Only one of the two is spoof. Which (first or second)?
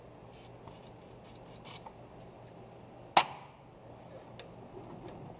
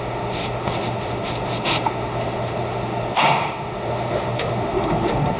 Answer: second